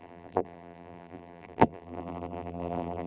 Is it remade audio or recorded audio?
remade